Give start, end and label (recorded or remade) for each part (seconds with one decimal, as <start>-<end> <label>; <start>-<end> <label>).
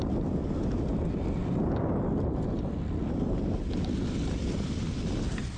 0.0-5.6 recorded